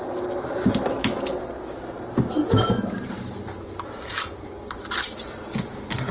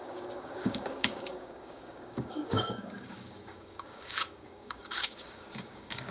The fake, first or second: second